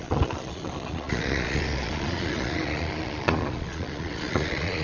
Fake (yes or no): yes